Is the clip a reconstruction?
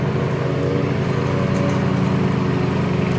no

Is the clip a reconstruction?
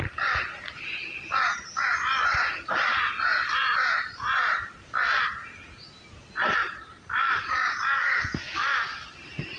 no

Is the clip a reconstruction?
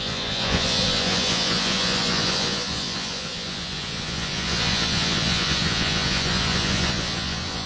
yes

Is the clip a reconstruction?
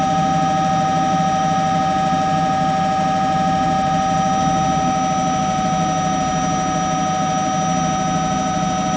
no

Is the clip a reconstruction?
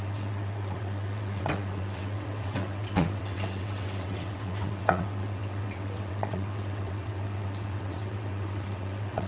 yes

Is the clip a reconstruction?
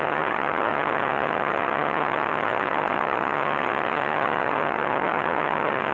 yes